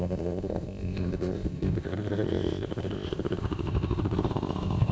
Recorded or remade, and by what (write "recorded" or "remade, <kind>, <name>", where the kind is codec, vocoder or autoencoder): remade, codec, ZipCodec